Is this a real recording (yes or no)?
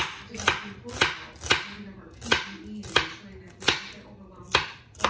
yes